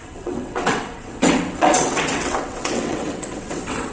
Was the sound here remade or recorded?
remade